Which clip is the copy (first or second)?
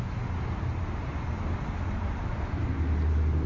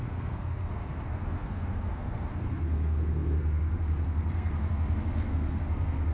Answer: second